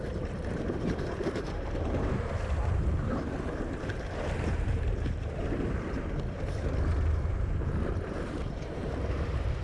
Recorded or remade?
remade